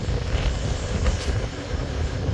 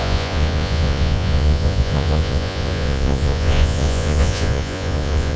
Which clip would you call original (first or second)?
first